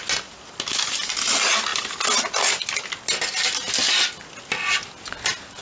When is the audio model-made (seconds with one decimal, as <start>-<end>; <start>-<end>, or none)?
none